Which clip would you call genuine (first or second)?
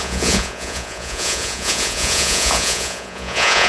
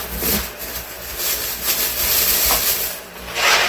second